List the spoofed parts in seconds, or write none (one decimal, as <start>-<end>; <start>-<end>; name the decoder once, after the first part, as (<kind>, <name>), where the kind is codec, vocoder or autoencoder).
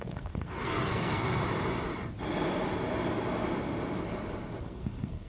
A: 0.0-1.4 (codec, SNAC); 4.6-5.3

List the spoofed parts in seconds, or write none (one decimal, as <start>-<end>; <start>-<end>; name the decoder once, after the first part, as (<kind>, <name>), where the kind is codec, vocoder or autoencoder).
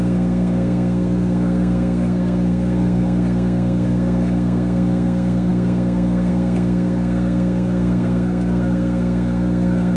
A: 0.0-10.0 (codec, SNAC)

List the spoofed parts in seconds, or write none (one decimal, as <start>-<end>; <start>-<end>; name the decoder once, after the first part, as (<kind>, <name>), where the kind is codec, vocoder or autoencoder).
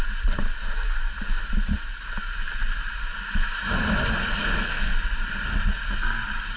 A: 4.4-4.9 (codec, SNAC)